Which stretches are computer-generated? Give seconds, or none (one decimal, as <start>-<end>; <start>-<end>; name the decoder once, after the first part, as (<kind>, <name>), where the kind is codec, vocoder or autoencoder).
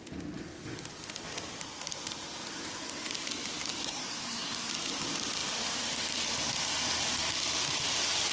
3.8-4.7 (codec, SNAC)